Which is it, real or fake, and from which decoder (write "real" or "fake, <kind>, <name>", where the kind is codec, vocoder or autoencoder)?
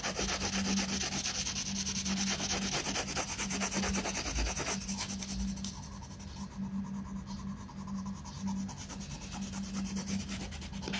real